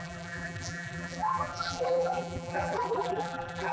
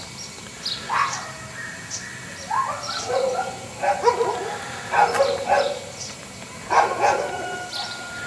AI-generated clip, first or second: first